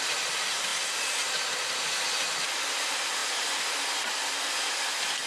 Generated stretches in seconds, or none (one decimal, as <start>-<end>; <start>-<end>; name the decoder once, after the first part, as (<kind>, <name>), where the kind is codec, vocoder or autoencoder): none